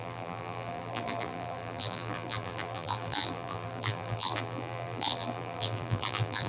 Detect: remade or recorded remade